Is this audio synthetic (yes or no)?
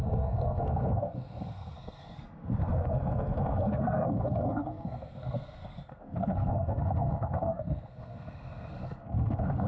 yes